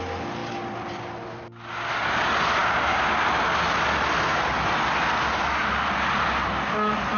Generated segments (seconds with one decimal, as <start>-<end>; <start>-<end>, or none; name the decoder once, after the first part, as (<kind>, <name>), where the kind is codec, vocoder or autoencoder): none